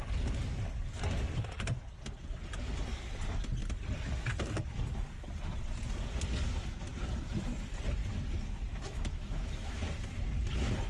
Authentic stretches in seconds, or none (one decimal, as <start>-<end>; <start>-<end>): 0.0-8.7; 9.8-10.9